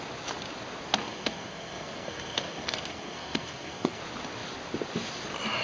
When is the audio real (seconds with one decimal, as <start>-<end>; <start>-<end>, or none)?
0.0-1.0; 4.0-5.6

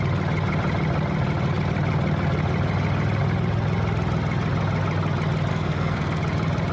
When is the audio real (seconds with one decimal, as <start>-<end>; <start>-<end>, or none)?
0.0-5.5; 6.2-6.7

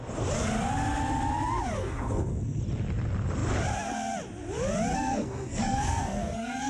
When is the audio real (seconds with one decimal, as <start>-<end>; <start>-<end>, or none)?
0.0-1.8; 2.6-4.9

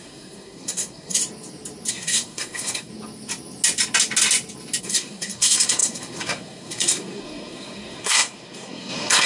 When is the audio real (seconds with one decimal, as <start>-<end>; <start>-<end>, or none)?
1.2-1.9; 2.9-4.8

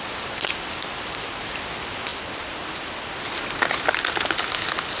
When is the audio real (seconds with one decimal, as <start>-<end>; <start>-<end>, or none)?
0.0-5.0

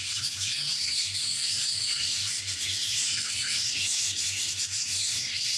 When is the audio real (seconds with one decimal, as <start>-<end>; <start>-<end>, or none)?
none